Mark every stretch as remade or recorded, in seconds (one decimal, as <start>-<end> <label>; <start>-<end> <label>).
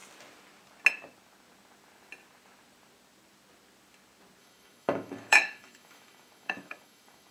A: 0.0-4.4 recorded; 4.4-7.3 remade